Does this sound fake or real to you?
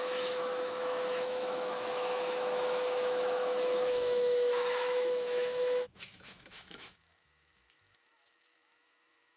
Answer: fake